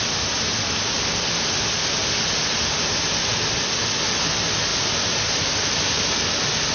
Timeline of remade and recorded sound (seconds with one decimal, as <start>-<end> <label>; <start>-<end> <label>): 0.0-0.5 recorded; 0.5-1.0 remade; 1.0-4.7 recorded; 4.7-6.0 remade; 6.0-6.7 recorded